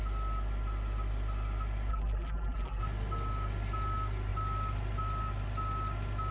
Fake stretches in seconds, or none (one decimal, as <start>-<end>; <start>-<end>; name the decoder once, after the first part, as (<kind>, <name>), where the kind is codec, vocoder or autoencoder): 1.9-2.8 (vocoder, BigVGAN v2)